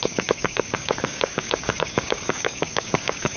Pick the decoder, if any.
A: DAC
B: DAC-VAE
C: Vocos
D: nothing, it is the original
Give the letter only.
A